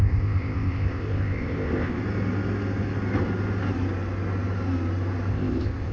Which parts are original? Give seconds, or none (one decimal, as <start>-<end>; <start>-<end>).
2.0-5.3